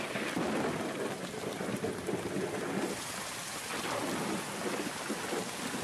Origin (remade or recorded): recorded